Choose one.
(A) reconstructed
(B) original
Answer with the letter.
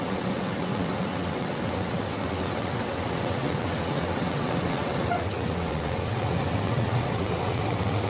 A